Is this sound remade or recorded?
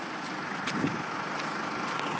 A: recorded